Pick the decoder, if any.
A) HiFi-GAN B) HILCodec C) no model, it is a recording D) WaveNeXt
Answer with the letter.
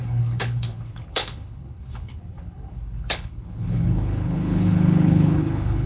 B